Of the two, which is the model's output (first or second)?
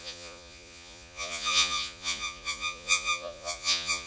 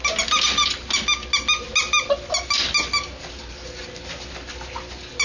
first